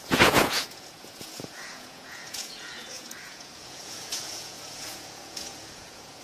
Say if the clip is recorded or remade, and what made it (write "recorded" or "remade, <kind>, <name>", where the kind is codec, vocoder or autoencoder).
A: remade, vocoder, Vocos